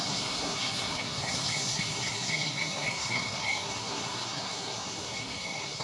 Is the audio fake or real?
fake